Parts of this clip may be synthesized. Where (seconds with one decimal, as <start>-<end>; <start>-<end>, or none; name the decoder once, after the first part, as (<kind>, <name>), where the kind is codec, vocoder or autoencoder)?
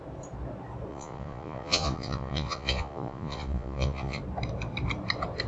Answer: 0.9-4.2 (vocoder, Vocos)